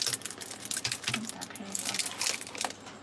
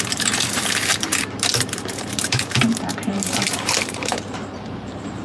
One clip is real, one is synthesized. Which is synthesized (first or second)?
second